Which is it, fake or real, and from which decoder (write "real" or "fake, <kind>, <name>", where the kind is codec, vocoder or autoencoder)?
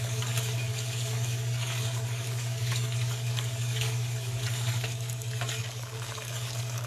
fake, codec, DAC